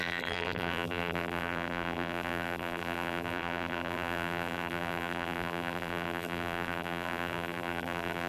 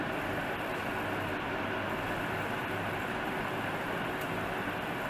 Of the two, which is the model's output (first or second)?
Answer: first